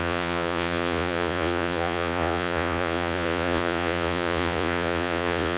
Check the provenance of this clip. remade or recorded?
remade